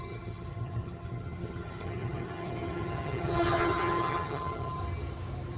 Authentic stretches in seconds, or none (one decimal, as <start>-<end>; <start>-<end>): 4.8-5.6